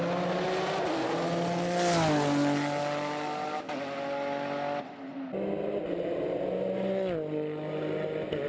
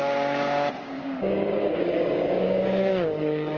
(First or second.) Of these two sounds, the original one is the first